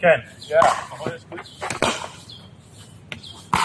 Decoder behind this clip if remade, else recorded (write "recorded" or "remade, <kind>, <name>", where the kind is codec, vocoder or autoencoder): recorded